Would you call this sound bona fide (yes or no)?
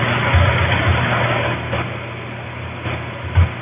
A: yes